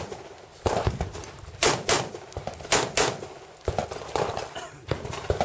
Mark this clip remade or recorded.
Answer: recorded